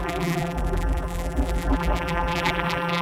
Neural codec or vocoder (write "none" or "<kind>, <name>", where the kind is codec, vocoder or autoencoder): vocoder, BigVGAN v2